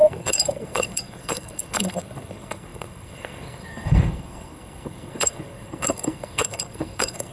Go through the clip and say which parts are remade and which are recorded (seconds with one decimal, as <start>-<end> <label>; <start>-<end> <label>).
0.0-7.3 remade